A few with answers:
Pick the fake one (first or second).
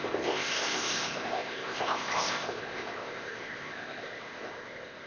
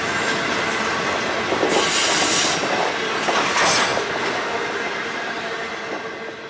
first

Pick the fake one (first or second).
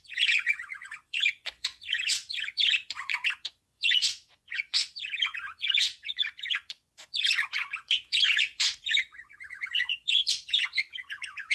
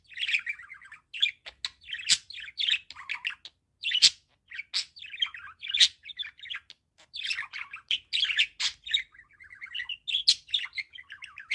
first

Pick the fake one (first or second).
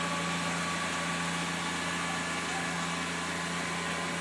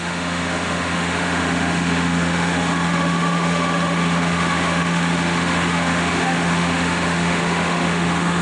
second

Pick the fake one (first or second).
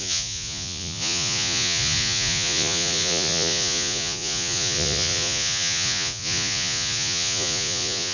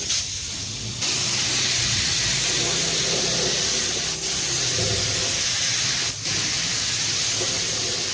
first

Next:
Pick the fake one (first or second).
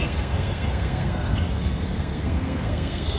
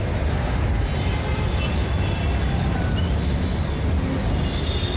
first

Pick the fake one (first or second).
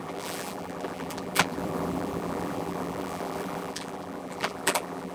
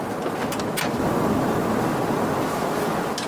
first